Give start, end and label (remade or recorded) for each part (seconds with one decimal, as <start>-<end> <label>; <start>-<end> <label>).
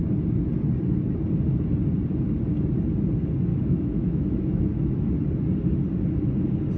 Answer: 0.0-3.5 recorded; 3.5-4.6 remade; 4.6-6.8 recorded